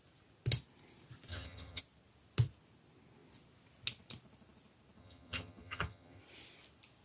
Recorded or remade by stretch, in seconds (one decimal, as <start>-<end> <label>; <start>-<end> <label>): 0.0-1.3 recorded; 1.3-1.8 remade; 1.8-5.0 recorded; 5.0-6.2 remade; 6.2-7.0 recorded